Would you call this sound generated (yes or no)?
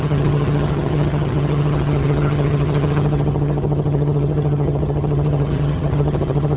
yes